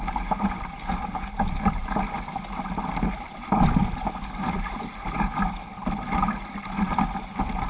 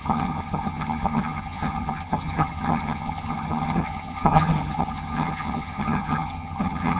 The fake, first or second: second